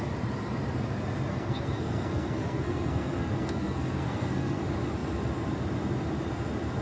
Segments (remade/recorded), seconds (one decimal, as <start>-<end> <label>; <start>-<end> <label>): 0.0-1.3 recorded; 1.3-4.6 remade; 4.6-6.8 recorded